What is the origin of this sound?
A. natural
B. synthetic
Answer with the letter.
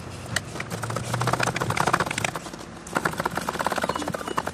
A